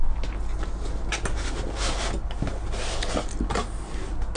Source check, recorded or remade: recorded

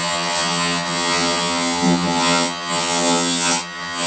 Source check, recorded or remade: remade